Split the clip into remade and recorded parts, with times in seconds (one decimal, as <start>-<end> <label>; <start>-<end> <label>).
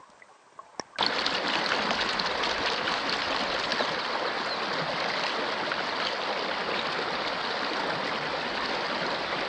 0.0-9.5 recorded